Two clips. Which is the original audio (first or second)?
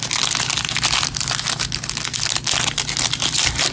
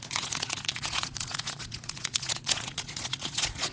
first